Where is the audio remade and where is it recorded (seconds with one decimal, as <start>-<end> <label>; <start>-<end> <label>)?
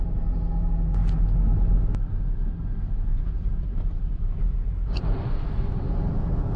0.0-3.1 recorded; 3.1-5.4 remade; 5.4-6.6 recorded